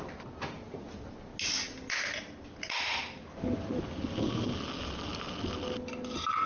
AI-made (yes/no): no